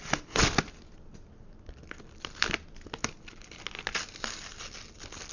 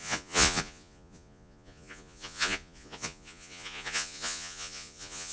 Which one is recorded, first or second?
first